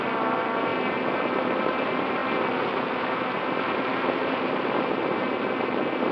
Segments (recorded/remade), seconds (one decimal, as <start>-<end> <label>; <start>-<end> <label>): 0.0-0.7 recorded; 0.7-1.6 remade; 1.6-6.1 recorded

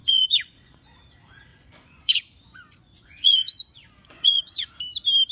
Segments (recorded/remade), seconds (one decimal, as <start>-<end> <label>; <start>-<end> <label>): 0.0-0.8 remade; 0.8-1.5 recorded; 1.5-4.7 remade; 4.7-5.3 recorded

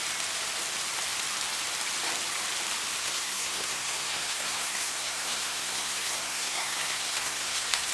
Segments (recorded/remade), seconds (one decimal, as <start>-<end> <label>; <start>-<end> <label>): 0.0-3.0 recorded; 3.0-7.9 remade

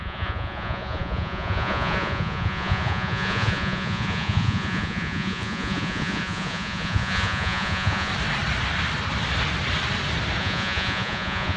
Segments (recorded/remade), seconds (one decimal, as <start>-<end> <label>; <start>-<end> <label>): 0.0-8.1 remade; 8.1-10.4 recorded; 10.4-11.6 remade

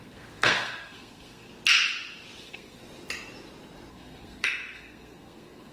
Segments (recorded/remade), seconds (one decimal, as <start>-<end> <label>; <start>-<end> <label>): 0.0-1.5 remade; 1.5-2.4 recorded; 2.4-2.8 remade; 2.8-3.9 recorded; 3.9-5.7 remade